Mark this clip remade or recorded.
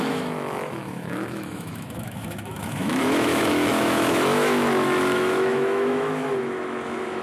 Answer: remade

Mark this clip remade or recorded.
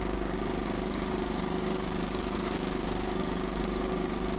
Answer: remade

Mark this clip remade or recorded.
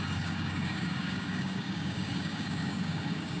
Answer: remade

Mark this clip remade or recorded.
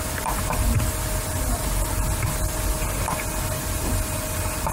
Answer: recorded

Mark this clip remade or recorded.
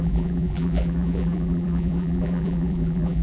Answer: remade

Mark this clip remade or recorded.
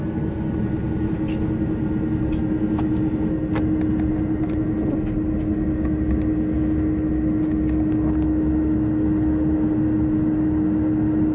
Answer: recorded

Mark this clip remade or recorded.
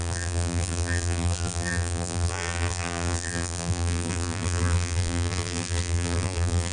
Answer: remade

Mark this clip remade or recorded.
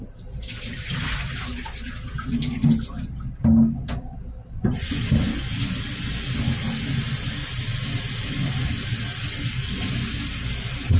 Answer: recorded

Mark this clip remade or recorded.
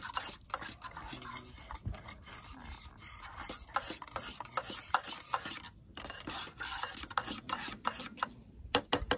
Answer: recorded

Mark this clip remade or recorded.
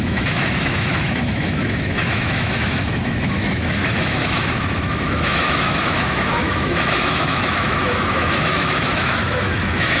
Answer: remade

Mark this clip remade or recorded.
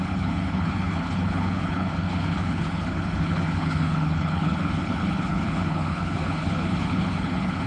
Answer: remade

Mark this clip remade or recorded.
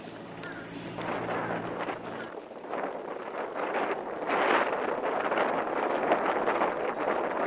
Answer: recorded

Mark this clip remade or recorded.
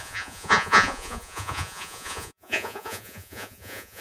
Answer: remade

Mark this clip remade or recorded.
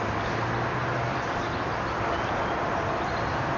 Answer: recorded